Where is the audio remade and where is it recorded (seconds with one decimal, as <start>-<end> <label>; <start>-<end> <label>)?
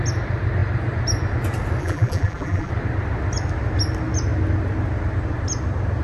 0.0-1.8 recorded; 1.8-2.7 remade; 2.7-6.0 recorded